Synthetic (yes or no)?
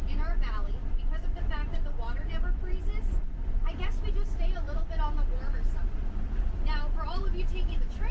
no